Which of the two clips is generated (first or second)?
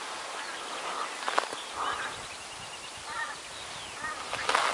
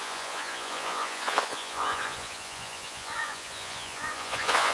second